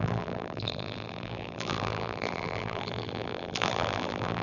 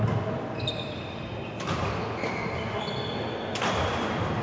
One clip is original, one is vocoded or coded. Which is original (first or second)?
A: second